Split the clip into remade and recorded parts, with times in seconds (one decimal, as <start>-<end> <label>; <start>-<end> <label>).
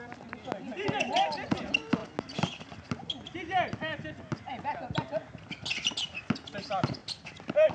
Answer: 0.0-7.7 recorded